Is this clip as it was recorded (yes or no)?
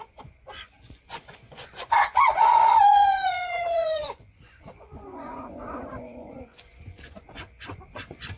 no